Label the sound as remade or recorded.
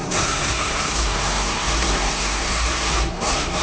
remade